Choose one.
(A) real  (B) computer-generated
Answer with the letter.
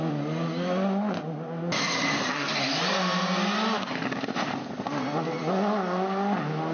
A